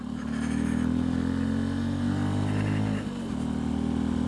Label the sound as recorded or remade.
recorded